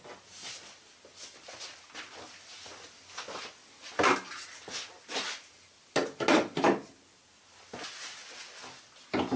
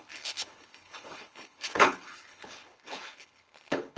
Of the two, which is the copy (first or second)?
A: second